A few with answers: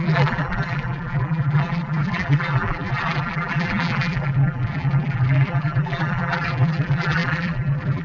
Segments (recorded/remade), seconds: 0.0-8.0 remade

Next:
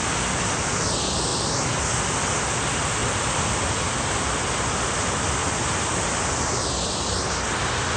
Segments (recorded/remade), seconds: 0.0-8.0 recorded

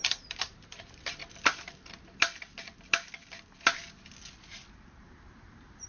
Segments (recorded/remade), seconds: 0.0-1.2 remade; 1.2-4.7 recorded; 4.7-5.9 remade

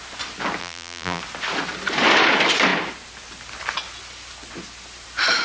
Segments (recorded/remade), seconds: 0.0-0.6 recorded; 0.6-1.2 remade; 1.2-5.4 recorded

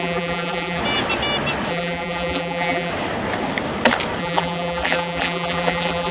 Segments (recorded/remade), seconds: 0.0-0.8 remade; 0.8-1.7 recorded; 1.7-2.9 remade; 2.9-4.2 recorded; 4.2-6.1 remade

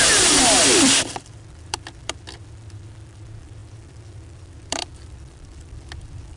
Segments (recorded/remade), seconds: 0.0-6.4 remade